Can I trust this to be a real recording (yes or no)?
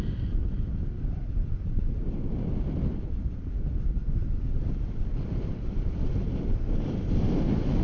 yes